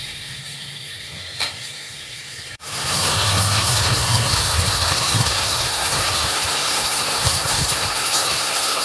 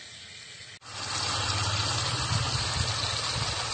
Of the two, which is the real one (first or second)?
second